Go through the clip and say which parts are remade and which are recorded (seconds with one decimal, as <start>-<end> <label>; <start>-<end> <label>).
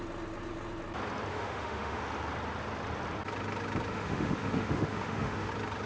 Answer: 0.0-1.3 recorded; 1.3-2.0 remade; 2.0-3.9 recorded; 3.9-5.5 remade; 5.5-5.9 recorded